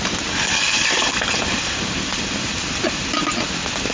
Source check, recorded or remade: recorded